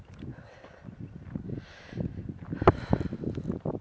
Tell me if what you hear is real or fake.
real